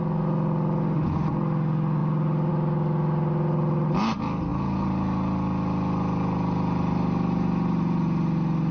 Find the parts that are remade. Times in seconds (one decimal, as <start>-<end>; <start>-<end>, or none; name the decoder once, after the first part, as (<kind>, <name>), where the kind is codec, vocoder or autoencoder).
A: none